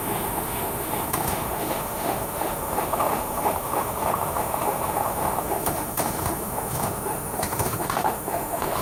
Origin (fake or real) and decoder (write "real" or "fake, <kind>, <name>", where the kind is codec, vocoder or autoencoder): fake, autoencoder, DAC-VAE